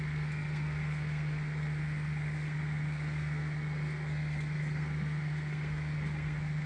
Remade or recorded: remade